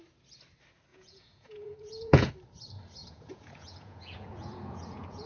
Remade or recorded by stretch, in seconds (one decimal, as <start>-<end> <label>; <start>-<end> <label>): 0.0-0.9 recorded; 0.9-2.3 remade; 2.3-3.0 recorded; 3.0-5.3 remade